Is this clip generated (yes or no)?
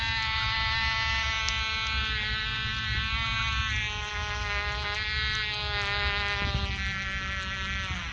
no